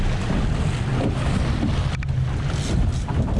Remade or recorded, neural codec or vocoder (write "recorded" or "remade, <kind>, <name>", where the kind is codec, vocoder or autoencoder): recorded